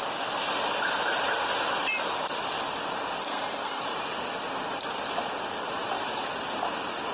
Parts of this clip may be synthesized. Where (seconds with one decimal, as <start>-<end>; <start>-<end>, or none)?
3.2-3.8